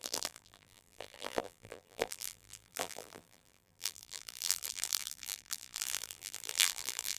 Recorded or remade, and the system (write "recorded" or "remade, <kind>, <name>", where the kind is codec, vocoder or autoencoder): remade, vocoder, BigVGAN v2